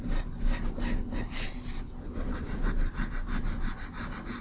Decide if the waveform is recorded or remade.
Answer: recorded